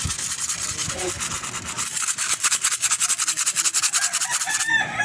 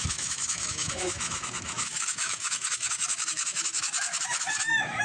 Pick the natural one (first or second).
first